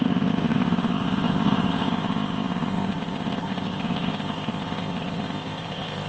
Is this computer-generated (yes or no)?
yes